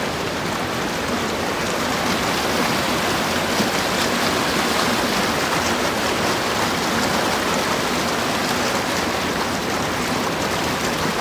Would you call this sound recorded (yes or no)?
yes